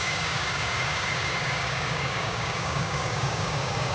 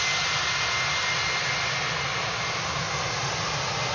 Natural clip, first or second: second